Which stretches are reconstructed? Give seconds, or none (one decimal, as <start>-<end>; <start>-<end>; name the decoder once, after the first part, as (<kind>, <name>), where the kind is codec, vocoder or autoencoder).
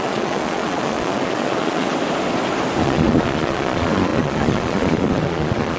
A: 0.0-1.9 (vocoder, Vocos); 2.8-5.8